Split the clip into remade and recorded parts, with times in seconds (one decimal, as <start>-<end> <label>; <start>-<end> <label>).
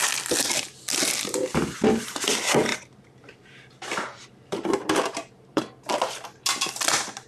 0.0-2.7 recorded; 2.7-5.6 remade; 5.6-7.3 recorded